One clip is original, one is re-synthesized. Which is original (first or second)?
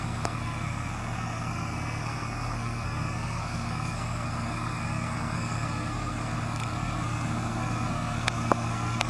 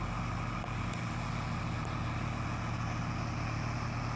second